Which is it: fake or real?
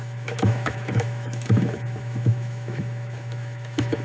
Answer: fake